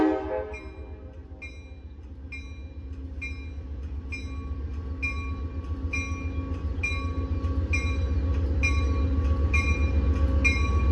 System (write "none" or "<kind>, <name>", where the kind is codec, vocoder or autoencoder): none